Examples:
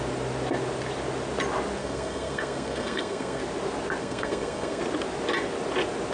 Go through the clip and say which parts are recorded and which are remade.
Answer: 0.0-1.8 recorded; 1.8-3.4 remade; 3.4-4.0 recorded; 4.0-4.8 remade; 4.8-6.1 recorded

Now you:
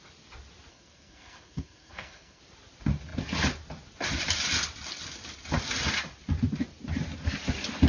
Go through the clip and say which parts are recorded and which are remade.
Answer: 0.0-0.7 recorded; 0.7-2.4 remade; 2.4-7.9 recorded

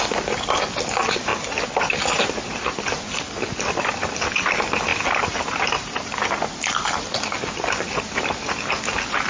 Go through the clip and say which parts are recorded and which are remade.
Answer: 0.0-9.3 recorded

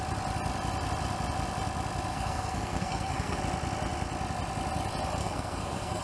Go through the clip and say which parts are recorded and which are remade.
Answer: 0.0-2.1 recorded; 2.1-3.4 remade; 3.4-5.2 recorded; 5.2-6.0 remade

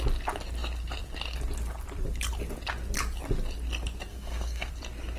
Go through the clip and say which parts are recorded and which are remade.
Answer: 0.0-4.1 recorded; 4.1-4.7 remade; 4.7-5.2 recorded